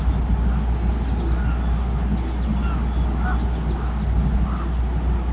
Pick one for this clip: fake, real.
real